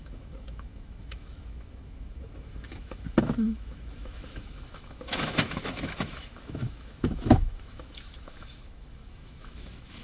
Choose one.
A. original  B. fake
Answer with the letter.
B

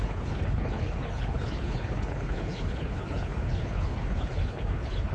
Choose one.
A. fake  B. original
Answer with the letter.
A